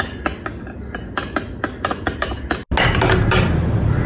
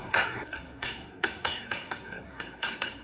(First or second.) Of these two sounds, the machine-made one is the second